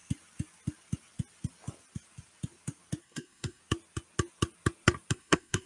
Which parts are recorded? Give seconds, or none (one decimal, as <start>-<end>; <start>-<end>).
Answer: 0.0-3.0; 3.6-5.1